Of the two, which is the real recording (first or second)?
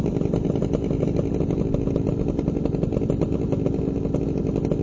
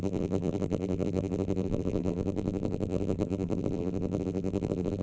first